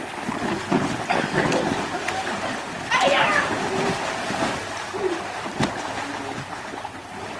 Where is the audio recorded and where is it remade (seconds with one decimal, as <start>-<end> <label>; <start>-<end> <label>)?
0.0-7.4 recorded